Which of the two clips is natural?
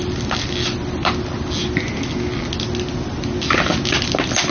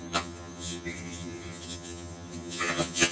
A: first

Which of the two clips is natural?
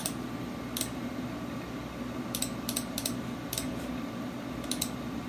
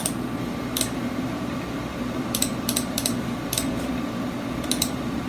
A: first